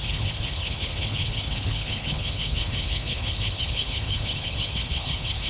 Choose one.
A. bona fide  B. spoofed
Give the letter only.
B